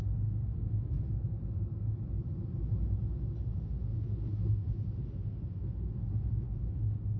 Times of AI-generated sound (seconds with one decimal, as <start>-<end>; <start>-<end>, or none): 0.0-1.2; 3.5-7.2